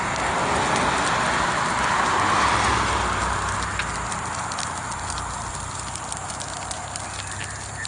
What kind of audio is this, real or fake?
real